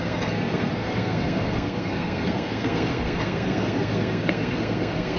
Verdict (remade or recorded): remade